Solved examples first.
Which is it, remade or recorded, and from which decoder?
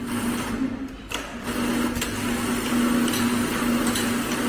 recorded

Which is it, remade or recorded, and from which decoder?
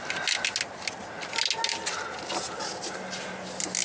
recorded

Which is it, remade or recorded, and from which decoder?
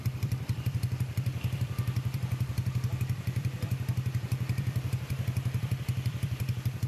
remade, vocoder, BigVGAN v2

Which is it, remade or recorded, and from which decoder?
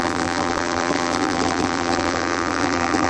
remade, vocoder, BigVGAN v2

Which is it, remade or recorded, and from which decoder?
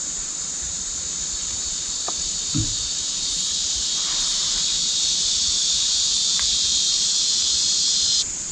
remade, vocoder, BigVGAN v2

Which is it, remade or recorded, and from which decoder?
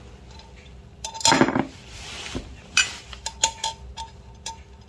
recorded